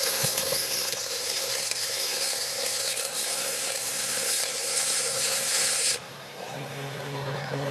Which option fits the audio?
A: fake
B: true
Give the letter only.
A